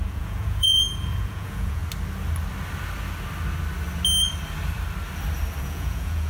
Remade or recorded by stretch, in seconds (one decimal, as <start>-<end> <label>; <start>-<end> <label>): 0.0-1.8 remade; 1.8-5.6 recorded; 5.6-6.3 remade